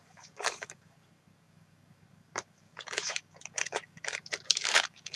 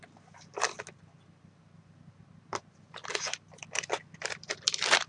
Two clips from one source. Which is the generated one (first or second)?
first